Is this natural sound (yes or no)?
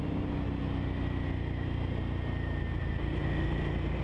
yes